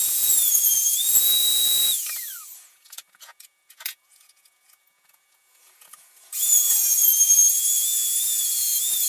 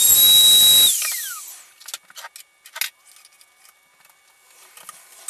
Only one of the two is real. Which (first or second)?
second